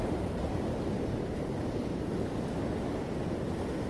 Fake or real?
real